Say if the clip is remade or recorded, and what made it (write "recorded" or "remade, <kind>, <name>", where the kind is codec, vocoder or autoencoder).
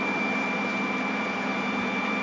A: remade, vocoder, BigVGAN v2